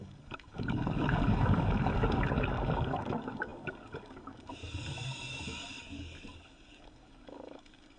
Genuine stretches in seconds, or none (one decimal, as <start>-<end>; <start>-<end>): none

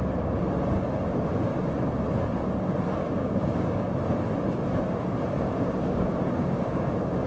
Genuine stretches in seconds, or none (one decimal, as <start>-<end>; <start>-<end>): 0.0-3.0; 3.9-5.4

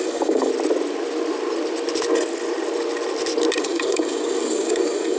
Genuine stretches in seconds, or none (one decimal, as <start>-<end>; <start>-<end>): 0.5-3.6

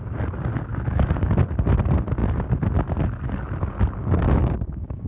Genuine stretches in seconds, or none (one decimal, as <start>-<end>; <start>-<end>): 0.0-0.7; 1.3-4.4

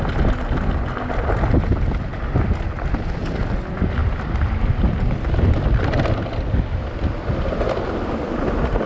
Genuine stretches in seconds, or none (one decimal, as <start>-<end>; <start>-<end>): 0.0-8.9